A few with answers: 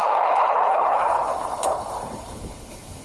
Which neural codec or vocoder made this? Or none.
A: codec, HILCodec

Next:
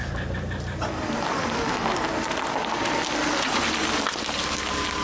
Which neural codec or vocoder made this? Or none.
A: none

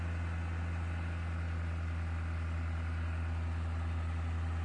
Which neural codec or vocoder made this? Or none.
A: none